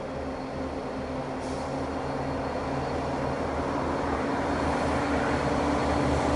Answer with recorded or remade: recorded